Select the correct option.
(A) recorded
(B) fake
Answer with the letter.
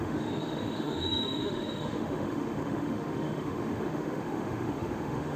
B